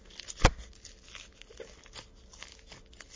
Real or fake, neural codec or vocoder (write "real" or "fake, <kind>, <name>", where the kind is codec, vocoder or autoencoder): real